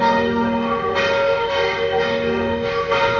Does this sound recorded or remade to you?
remade